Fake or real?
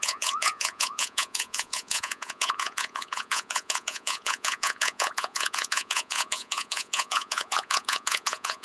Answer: fake